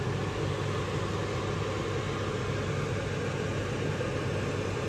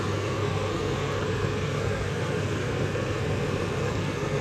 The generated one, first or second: second